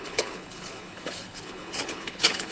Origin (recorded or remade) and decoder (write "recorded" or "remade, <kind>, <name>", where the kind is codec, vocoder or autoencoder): remade, codec, HILCodec